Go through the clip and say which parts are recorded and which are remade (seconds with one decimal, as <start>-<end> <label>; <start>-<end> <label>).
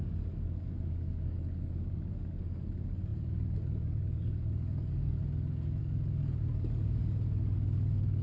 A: 0.0-5.2 remade; 5.2-5.8 recorded; 5.8-8.2 remade